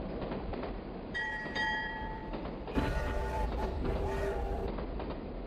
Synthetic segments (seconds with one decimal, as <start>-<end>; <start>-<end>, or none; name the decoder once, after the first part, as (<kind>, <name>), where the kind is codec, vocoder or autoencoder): 0.0-2.2 (vocoder, BigVGAN v2)